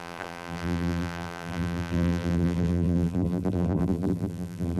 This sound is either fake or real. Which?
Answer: fake